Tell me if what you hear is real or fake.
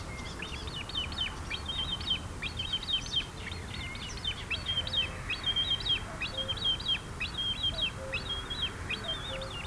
real